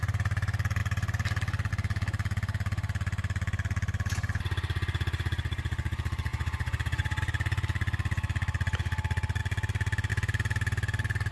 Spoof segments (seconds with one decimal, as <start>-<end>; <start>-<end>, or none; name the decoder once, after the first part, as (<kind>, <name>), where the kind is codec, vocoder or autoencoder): 6.3-7.2 (vocoder, Vocos)